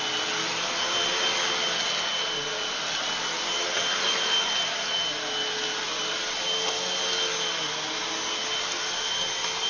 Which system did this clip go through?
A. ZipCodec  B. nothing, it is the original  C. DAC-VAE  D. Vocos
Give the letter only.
B